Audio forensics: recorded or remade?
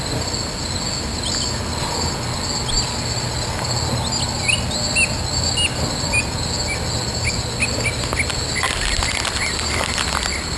recorded